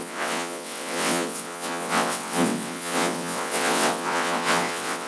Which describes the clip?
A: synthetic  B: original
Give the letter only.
A